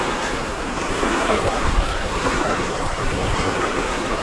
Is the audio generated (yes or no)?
yes